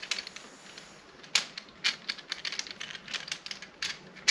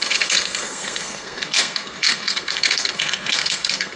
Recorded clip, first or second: first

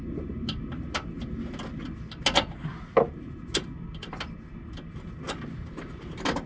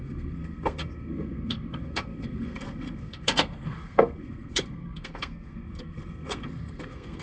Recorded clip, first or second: first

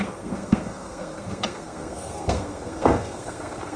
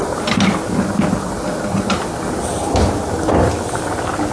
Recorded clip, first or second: second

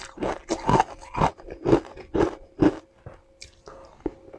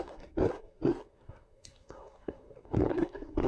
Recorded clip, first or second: first